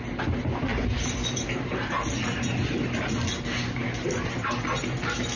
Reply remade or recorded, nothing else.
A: recorded